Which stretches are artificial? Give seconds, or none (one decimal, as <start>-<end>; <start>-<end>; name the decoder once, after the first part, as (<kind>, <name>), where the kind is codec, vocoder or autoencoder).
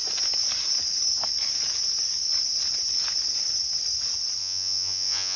4.4-5.4 (vocoder, Vocos)